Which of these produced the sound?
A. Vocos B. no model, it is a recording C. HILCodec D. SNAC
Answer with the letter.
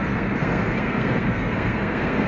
D